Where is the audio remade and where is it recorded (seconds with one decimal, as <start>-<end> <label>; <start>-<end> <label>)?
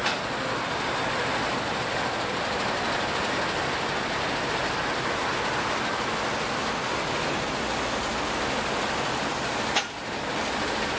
0.0-11.0 recorded